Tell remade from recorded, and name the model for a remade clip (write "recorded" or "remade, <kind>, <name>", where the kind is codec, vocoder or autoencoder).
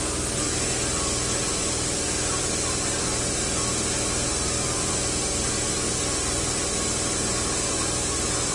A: recorded